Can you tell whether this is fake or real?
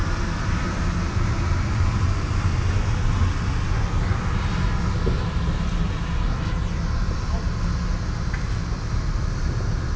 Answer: real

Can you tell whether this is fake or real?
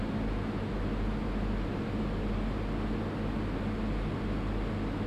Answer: real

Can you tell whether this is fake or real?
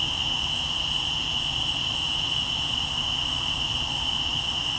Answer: real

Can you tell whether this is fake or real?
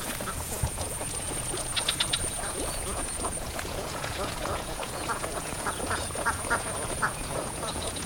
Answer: fake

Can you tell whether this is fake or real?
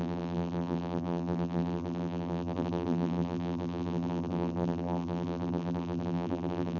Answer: fake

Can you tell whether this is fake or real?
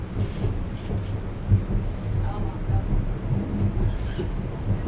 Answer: real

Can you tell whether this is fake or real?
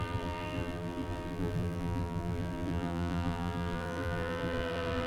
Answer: fake